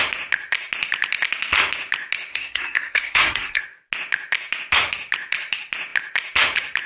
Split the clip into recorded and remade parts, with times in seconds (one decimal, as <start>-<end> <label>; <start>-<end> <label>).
0.0-2.3 recorded; 2.3-3.6 remade; 3.6-6.9 recorded